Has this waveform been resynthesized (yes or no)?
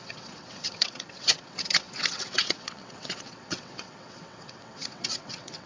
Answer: yes